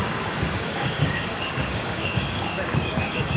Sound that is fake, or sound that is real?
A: fake